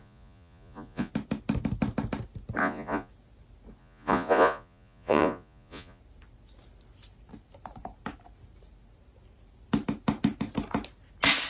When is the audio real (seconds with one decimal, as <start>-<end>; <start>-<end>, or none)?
1.1-2.6; 3.1-3.8; 6.0-11.5